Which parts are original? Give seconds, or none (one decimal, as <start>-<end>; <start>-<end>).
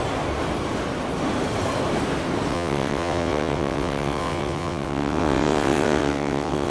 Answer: 0.0-2.5